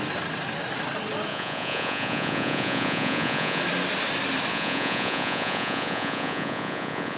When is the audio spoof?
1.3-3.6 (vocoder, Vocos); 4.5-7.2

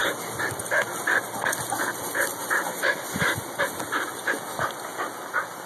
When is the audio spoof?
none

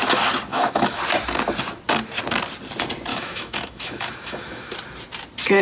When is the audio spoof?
0.5-1.0 (autoencoder, DAC-VAE); 3.1-4.7